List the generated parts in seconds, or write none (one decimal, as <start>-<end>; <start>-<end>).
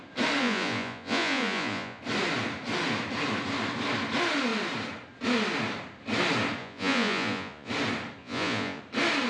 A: 0.4-2.0; 6.6-7.7; 8.2-8.8